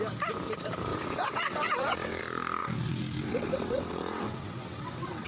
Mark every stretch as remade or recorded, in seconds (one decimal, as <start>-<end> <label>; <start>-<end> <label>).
0.0-0.9 recorded; 0.9-2.2 remade; 2.2-2.6 recorded; 2.6-5.3 remade